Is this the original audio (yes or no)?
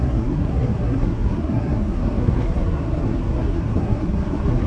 no